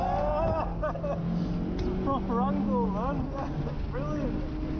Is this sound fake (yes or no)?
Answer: no